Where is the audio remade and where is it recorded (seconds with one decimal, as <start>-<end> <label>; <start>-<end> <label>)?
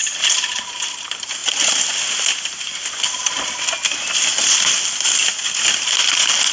0.0-6.5 recorded